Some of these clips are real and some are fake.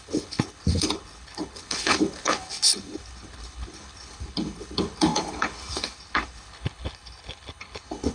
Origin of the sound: fake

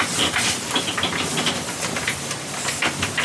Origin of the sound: real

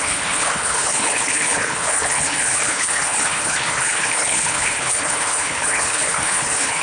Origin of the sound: fake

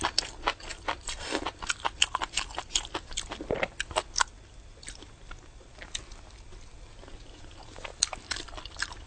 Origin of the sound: real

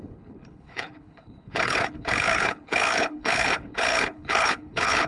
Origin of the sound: fake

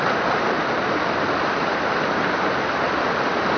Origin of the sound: real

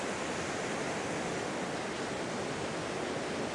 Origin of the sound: real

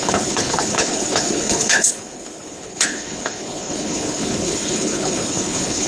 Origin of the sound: fake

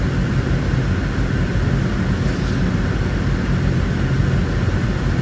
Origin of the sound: real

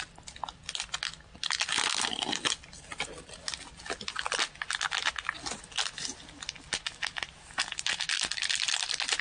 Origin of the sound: real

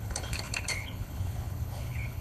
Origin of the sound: fake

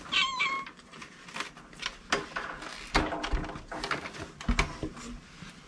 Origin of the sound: real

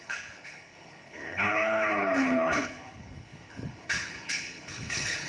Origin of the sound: fake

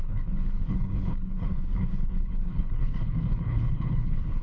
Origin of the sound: fake